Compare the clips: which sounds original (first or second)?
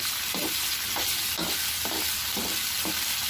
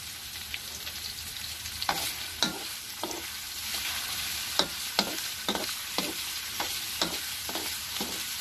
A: first